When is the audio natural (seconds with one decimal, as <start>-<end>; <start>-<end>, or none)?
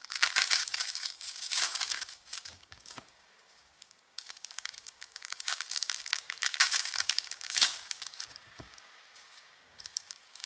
none